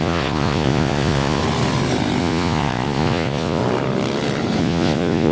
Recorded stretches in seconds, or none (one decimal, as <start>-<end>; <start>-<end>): 1.4-2.2; 3.6-4.6